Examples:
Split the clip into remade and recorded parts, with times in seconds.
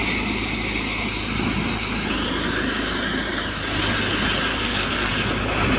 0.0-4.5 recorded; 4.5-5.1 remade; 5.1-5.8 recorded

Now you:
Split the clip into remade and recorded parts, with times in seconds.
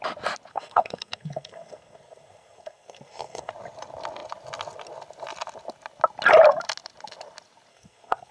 0.0-0.5 recorded; 0.5-3.5 remade; 3.5-7.7 recorded; 7.7-8.3 remade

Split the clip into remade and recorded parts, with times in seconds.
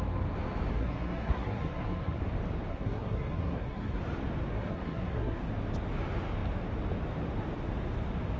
0.0-0.7 recorded; 0.7-2.2 remade; 2.2-2.7 recorded; 2.7-4.0 remade; 4.0-4.5 recorded; 4.5-5.4 remade; 5.4-8.4 recorded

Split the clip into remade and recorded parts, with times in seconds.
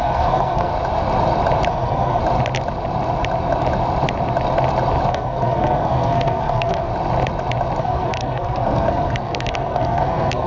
0.0-0.7 remade; 0.7-1.7 recorded; 1.7-2.2 remade; 2.2-5.1 recorded; 5.1-6.9 remade; 6.9-7.8 recorded; 7.8-10.5 remade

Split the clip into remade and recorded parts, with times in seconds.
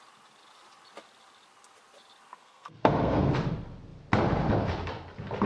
0.0-2.3 recorded; 2.3-3.3 remade; 3.3-5.5 recorded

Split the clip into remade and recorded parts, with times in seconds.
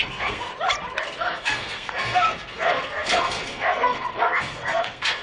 0.0-0.5 remade; 0.5-1.2 recorded; 1.2-5.2 remade